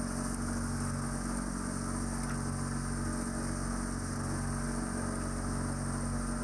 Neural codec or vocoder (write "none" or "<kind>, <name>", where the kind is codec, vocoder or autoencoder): none